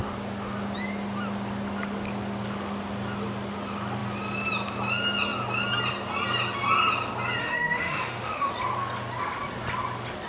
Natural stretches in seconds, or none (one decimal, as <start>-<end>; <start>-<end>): 0.0-7.4; 8.5-10.3